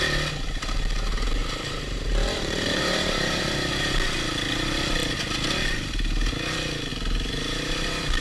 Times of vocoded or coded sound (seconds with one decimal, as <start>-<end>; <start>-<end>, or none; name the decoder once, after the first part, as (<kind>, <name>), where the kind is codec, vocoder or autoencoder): 1.4-3.4 (vocoder, BigVGAN v2); 6.9-8.2